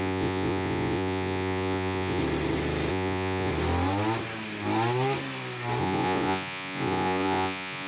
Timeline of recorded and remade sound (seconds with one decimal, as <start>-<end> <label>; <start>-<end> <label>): 0.0-2.2 remade; 2.2-2.9 recorded; 2.9-3.5 remade; 3.5-5.8 recorded; 5.8-7.9 remade